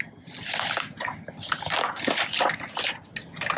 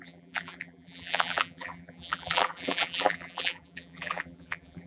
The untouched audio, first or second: first